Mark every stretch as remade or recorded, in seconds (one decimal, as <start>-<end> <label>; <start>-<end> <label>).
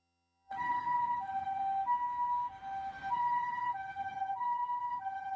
0.0-1.6 remade; 1.6-3.1 recorded; 3.1-5.4 remade